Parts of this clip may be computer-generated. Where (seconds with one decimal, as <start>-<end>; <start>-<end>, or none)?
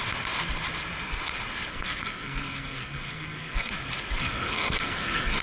1.7-3.7; 4.2-5.4